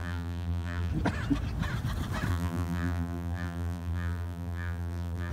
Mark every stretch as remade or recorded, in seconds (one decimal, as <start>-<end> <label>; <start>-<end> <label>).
0.0-0.9 remade; 0.9-2.3 recorded; 2.3-5.3 remade